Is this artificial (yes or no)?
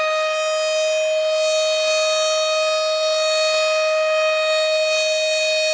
no